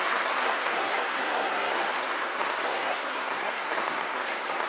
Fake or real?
fake